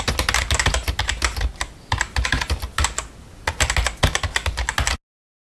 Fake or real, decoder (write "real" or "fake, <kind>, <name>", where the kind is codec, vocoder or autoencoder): real